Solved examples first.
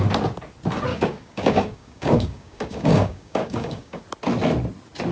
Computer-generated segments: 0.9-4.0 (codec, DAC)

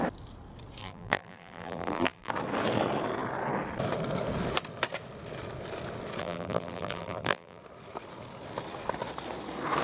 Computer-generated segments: 0.8-2.3 (vocoder, BigVGAN v2); 6.2-7.6

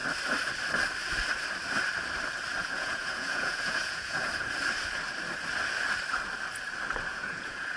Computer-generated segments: 2.6-4.3 (vocoder, Vocos); 7.1-7.8

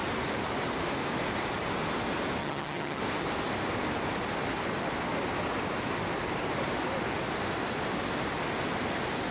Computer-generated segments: 2.4-3.0 (vocoder, HiFi-GAN)

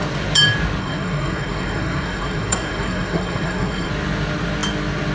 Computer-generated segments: 0.8-3.9 (codec, SNAC)

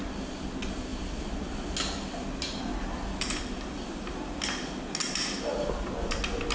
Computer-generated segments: none

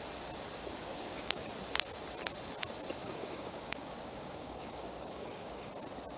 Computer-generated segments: 0.6-1.5 (codec, DAC); 3.0-5.7